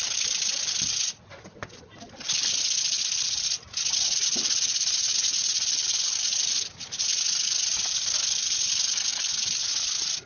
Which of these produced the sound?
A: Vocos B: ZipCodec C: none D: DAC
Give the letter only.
C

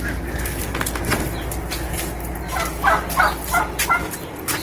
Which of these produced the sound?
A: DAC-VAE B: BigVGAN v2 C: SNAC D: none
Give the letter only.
D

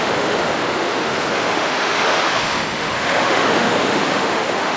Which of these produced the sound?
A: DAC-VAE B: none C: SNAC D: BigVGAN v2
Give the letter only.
A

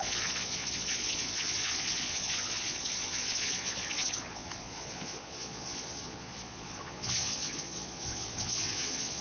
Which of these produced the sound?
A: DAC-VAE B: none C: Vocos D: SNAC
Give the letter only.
C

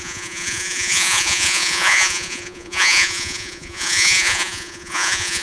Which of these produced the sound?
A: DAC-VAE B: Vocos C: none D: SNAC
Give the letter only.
B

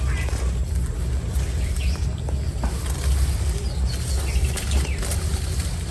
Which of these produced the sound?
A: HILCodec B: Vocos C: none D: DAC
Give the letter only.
C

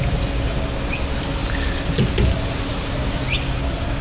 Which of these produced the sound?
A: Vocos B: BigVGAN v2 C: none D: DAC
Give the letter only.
C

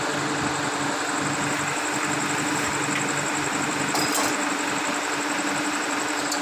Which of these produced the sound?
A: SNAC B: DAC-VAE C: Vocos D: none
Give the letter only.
D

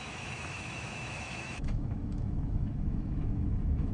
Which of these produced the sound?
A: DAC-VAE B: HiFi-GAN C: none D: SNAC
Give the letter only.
A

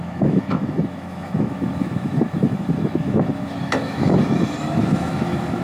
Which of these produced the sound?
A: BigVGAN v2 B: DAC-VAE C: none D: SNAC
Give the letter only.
B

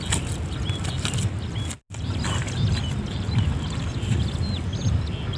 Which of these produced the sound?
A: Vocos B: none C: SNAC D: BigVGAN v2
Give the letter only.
B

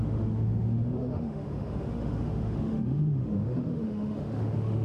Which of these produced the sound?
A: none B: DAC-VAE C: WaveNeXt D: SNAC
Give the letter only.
B